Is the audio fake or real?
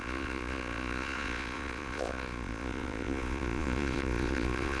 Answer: fake